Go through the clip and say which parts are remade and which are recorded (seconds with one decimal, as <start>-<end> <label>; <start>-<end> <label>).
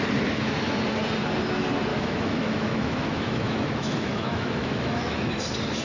0.0-1.9 recorded; 1.9-5.3 remade; 5.3-5.8 recorded